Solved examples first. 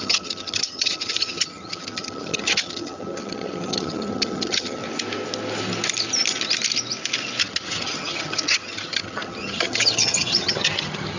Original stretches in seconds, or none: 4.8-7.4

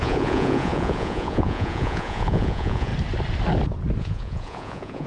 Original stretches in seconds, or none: 2.9-4.0

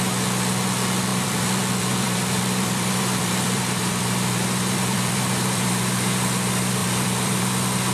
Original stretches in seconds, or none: 0.0-1.1; 5.8-6.8; 7.4-7.9

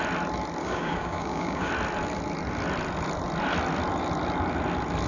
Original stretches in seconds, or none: 0.0-0.6; 1.7-5.1

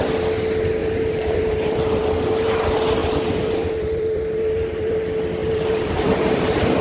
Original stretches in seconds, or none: 0.0-0.8; 2.6-3.0; 5.0-5.4

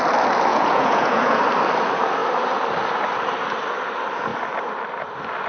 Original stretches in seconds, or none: 0.0-0.5; 1.4-5.5

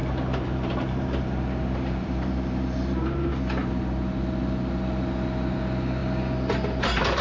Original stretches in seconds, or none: 3.3-7.2

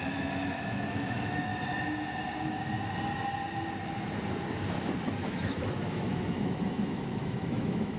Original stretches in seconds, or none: 1.5-5.2